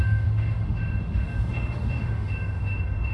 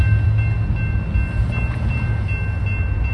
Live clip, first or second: second